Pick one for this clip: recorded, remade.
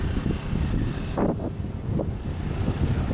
recorded